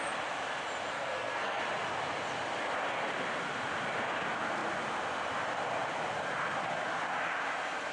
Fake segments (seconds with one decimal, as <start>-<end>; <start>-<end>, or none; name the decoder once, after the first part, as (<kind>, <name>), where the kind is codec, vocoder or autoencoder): 0.9-1.6 (codec, SNAC)